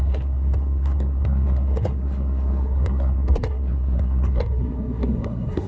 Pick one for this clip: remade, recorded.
remade